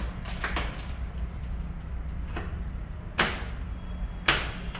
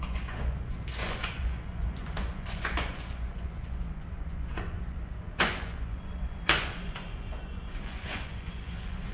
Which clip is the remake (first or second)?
second